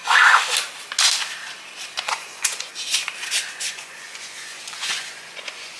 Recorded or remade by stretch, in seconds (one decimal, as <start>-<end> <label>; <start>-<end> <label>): 0.0-2.0 recorded; 2.0-2.7 remade; 2.7-3.5 recorded; 3.5-5.8 remade